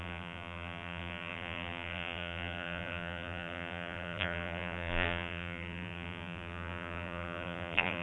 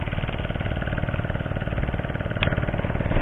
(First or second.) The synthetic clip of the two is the first